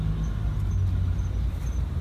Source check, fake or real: real